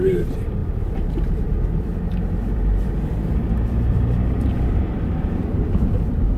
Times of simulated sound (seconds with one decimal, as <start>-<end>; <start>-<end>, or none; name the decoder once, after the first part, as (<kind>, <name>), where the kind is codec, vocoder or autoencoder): 0.0-6.4 (vocoder, BigVGAN v2)